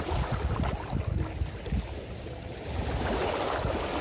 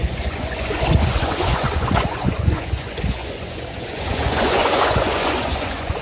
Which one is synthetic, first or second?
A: second